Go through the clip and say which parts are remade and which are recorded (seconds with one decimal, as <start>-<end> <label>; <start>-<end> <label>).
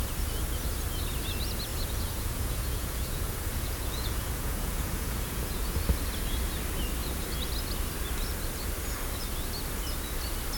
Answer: 0.0-1.7 recorded; 1.7-5.7 remade; 5.7-10.6 recorded